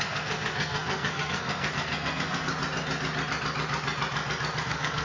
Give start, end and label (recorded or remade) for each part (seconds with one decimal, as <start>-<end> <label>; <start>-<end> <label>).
0.0-2.5 remade; 2.5-4.6 recorded; 4.6-5.0 remade